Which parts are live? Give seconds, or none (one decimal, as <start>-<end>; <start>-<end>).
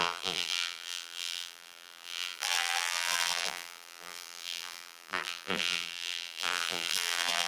none